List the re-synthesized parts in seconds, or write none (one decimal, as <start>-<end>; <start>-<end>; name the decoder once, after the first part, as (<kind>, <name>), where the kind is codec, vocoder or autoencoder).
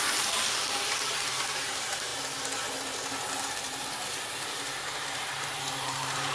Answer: 0.0-2.1 (vocoder, BigVGAN v2); 3.3-3.8; 4.8-6.3